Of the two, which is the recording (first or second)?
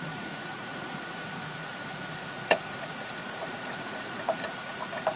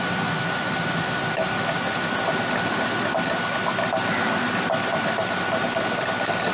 second